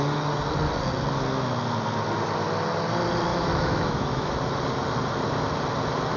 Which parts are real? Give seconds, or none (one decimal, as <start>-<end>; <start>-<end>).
0.0-3.3; 4.3-6.2